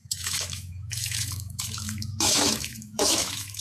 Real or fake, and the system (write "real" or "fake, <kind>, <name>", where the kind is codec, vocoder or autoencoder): fake, autoencoder, DAC-VAE